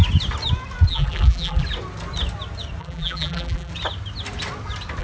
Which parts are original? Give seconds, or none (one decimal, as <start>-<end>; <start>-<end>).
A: 0.0-0.9; 1.6-2.8; 3.7-5.0